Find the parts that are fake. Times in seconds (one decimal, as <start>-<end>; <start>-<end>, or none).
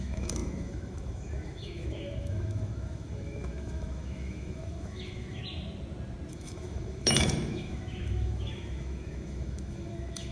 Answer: 0.0-5.4; 6.3-10.3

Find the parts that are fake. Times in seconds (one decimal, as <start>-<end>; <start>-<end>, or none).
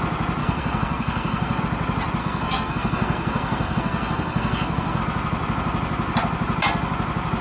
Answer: 0.4-1.6; 2.2-5.0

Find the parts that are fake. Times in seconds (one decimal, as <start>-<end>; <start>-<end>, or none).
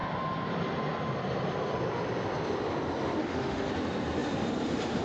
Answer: 3.2-3.7